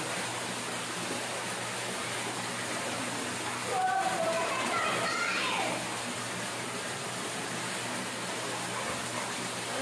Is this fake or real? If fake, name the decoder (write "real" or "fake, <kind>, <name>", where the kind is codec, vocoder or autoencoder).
real